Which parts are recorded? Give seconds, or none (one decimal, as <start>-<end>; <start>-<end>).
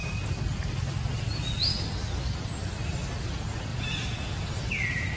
0.0-3.7; 4.7-5.2